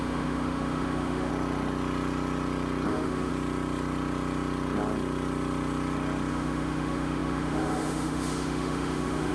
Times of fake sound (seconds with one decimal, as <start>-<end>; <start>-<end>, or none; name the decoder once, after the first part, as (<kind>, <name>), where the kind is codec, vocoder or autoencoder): 0.0-1.3 (autoencoder, DAC-VAE); 2.9-3.3; 6.3-9.3